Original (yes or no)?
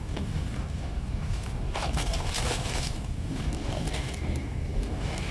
no